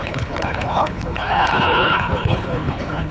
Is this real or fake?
fake